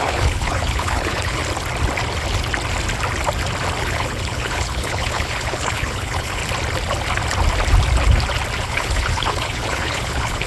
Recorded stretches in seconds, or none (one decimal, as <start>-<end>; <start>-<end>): 1.4-3.8; 6.4-8.6